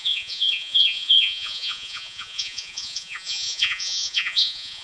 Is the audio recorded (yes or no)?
no